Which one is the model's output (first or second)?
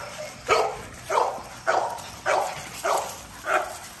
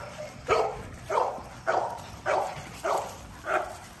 second